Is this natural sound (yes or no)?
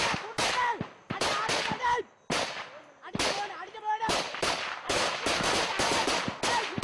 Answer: yes